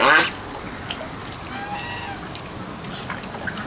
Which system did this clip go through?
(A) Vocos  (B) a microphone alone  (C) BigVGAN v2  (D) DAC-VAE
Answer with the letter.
B